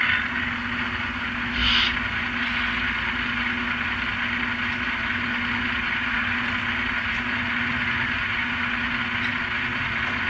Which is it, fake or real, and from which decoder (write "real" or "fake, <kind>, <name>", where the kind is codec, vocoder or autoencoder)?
real